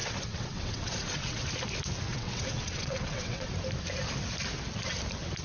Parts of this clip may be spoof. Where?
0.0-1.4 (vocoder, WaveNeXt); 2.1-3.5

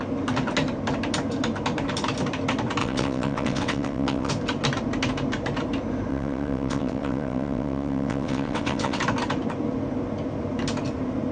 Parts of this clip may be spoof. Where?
2.8-4.3 (vocoder, WaveNeXt); 6.1-9.0